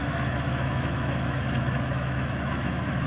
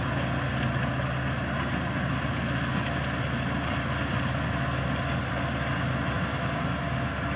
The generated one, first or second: first